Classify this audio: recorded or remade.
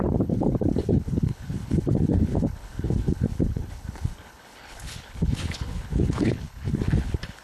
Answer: remade